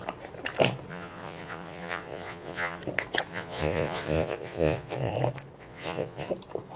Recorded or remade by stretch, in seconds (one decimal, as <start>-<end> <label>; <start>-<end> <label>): 0.0-0.9 recorded; 0.9-2.8 remade; 2.8-3.3 recorded; 3.3-5.1 remade; 5.1-5.6 recorded; 5.6-6.3 remade; 6.3-6.8 recorded